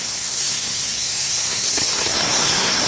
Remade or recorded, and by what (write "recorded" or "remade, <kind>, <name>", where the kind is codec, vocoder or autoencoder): remade, codec, SNAC